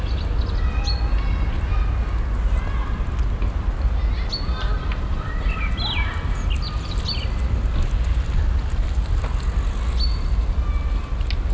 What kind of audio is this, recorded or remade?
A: recorded